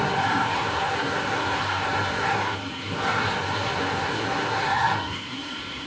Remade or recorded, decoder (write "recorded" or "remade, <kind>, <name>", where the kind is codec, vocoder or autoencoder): remade, codec, SNAC